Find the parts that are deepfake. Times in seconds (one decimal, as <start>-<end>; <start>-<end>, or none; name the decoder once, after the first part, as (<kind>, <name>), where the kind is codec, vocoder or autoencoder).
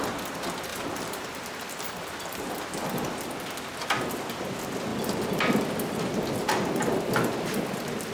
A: 0.7-2.5 (vocoder, BigVGAN v2)